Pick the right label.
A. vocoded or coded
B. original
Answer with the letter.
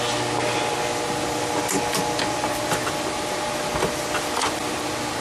B